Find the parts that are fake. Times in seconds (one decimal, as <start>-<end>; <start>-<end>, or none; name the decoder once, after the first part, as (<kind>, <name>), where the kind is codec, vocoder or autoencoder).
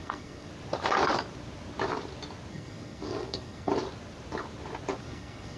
0.0-0.5 (codec, SNAC); 2.5-3.7; 5.0-5.6